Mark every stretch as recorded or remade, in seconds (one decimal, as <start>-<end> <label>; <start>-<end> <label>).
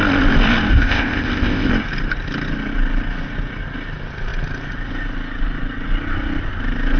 0.0-0.7 recorded; 0.7-1.7 remade; 1.7-7.0 recorded